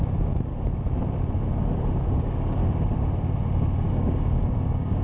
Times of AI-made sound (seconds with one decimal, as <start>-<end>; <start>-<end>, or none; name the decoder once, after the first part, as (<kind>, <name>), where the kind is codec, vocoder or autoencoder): 0.0-0.5 (codec, DAC); 2.0-2.6; 3.9-5.0